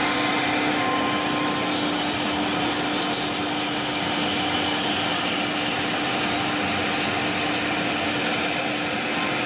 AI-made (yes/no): no